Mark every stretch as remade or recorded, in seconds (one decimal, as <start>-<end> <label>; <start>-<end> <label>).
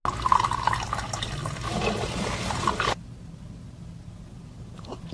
0.0-5.1 recorded